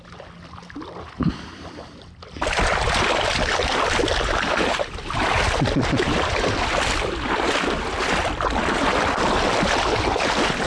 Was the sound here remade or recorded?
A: recorded